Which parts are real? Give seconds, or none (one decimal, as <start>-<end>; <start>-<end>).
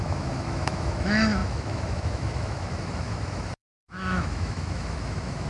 none